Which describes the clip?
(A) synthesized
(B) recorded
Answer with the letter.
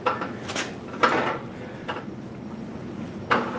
B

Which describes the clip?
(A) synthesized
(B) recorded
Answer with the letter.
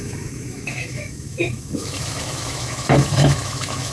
A